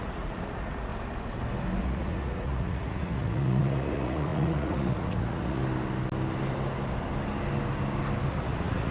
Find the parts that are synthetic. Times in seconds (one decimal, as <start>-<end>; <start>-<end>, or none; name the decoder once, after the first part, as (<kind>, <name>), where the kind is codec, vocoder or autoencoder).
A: 0.0-0.9 (vocoder, Vocos); 1.8-5.6; 8.3-8.9